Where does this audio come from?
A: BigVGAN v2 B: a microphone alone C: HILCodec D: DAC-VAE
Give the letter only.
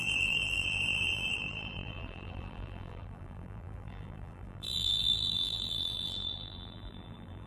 A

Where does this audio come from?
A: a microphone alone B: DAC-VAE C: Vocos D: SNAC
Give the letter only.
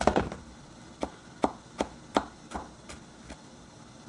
A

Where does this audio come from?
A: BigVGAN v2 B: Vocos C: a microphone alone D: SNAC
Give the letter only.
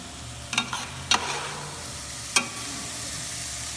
C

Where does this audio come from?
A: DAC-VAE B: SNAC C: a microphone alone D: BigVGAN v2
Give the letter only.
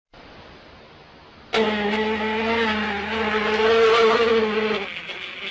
C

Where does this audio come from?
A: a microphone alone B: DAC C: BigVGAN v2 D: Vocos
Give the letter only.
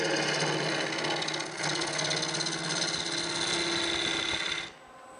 A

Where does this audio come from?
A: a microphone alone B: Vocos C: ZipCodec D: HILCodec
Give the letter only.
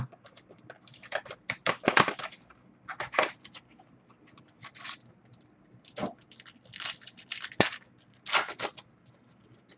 A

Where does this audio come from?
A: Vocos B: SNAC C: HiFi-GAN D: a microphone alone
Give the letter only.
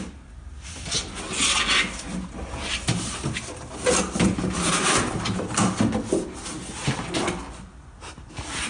D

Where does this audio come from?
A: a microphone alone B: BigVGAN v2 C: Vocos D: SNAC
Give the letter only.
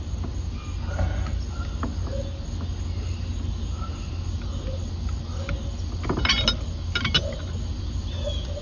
A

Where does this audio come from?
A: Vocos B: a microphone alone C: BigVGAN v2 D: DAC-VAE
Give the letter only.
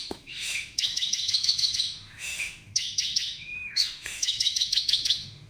D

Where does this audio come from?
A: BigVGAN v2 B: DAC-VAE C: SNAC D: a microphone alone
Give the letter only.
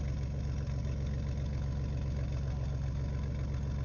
D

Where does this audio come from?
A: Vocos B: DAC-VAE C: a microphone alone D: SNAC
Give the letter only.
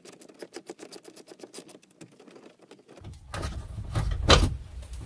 C